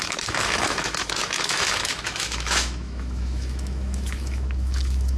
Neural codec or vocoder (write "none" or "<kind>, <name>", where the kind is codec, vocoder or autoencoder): autoencoder, DAC-VAE